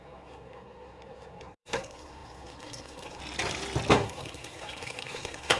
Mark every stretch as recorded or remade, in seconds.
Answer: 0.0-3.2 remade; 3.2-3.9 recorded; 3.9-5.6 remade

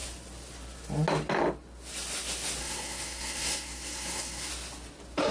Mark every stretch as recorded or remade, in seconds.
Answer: 0.0-2.6 recorded; 2.6-4.5 remade; 4.5-5.3 recorded